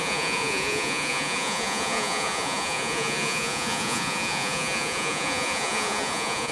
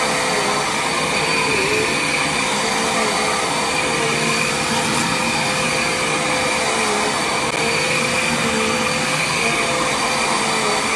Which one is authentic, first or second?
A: second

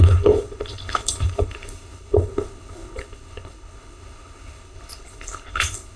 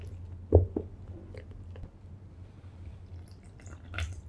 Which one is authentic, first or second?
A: second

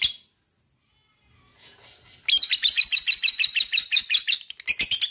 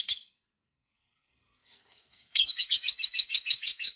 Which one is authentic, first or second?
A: first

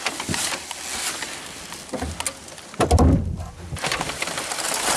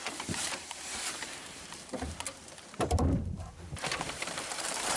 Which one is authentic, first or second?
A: first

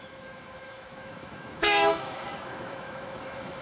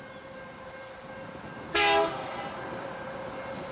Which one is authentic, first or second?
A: second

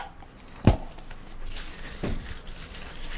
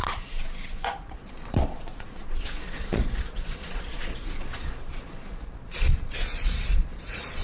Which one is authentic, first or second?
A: first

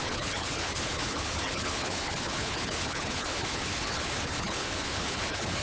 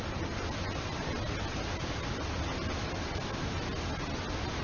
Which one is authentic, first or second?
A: second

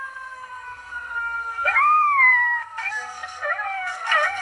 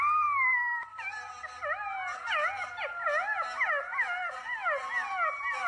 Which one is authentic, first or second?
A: second